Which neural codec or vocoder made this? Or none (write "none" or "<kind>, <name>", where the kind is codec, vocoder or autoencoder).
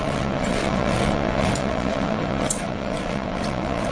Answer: vocoder, WaveNeXt